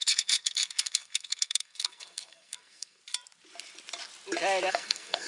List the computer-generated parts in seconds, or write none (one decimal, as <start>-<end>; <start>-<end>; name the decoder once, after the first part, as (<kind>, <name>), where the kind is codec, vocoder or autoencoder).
0.0-3.0 (codec, SNAC); 4.7-5.3